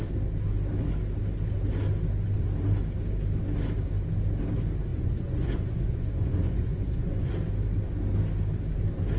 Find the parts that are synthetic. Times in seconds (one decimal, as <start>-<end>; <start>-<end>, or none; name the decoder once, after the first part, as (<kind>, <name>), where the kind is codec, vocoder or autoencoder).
4.9-7.3 (vocoder, Vocos)